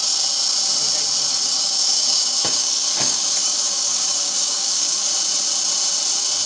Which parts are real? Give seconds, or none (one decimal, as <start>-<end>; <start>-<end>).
0.0-1.3; 5.1-6.5